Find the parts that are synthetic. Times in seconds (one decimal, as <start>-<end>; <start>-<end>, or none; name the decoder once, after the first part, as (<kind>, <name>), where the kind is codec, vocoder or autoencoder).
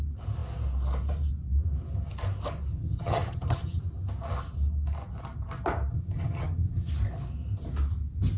2.7-3.8 (vocoder, HiFi-GAN); 5.9-6.9